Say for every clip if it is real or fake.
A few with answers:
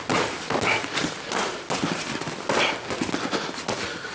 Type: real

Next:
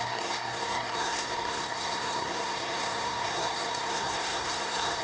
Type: fake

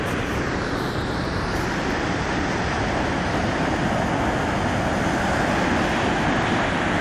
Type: real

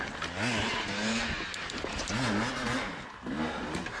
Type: real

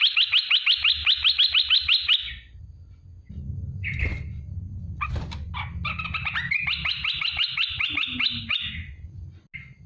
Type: real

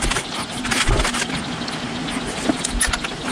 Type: real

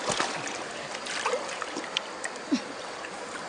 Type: real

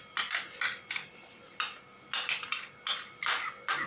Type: real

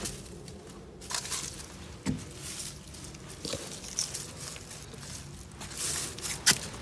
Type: real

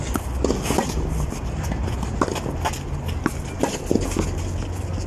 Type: real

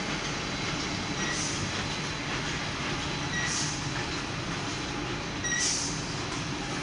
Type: real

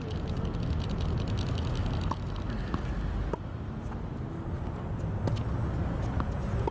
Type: real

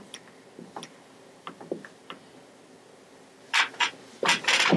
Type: real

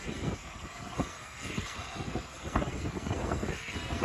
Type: fake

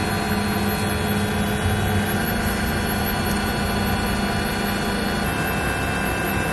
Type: real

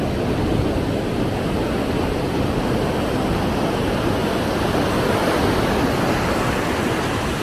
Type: real